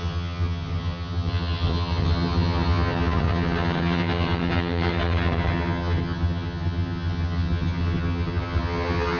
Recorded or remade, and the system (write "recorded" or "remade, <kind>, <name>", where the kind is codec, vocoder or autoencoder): remade, vocoder, HiFi-GAN